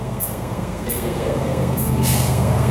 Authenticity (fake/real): fake